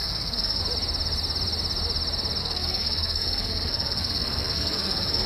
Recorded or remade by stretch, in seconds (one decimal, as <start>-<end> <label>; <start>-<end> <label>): 0.0-0.6 remade; 0.6-2.4 recorded; 2.4-5.3 remade